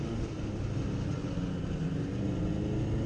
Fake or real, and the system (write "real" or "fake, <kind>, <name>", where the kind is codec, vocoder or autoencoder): real